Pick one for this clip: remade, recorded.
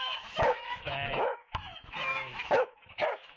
remade